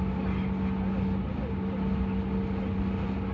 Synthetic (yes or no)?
no